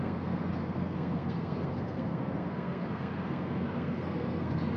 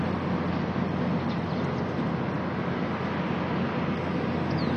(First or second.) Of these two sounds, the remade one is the first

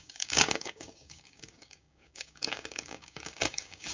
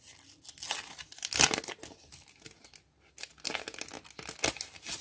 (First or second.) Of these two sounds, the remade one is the first